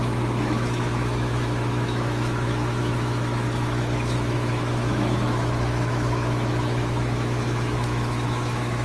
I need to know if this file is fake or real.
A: fake